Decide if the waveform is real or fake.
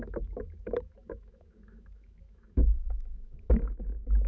fake